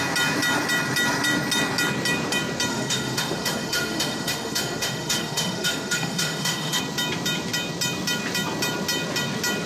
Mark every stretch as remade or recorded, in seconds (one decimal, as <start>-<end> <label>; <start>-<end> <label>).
0.0-2.7 recorded; 2.7-6.8 remade; 6.8-9.7 recorded